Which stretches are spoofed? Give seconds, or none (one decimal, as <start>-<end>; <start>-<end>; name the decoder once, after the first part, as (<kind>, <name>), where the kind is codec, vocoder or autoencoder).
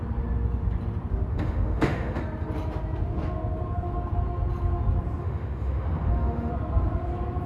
1.3-2.2 (autoencoder, DAC-VAE); 5.2-6.5